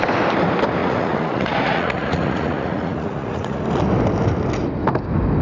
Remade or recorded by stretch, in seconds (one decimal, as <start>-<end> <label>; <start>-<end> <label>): 0.0-0.8 recorded; 0.8-3.6 remade; 3.6-5.4 recorded